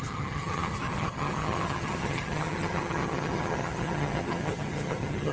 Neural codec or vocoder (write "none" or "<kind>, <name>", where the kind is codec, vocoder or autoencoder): vocoder, HiFi-GAN